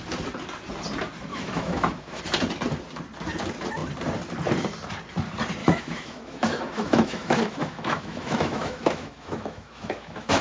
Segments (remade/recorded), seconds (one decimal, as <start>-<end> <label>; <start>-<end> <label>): 0.0-1.3 recorded; 1.3-2.2 remade; 2.2-5.6 recorded; 5.6-10.4 remade